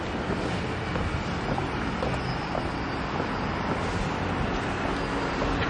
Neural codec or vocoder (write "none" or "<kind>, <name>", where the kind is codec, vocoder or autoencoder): none